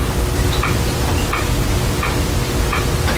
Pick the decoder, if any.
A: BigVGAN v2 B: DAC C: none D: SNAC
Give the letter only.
C